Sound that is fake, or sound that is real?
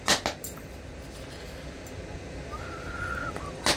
real